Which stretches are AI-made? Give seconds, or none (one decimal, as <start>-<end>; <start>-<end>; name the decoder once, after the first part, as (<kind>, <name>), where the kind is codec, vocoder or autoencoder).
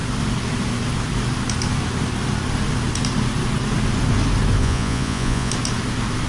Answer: 4.6-5.5 (vocoder, Vocos)